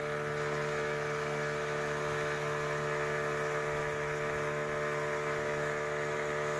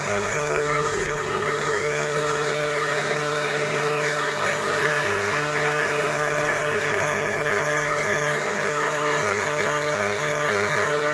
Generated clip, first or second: second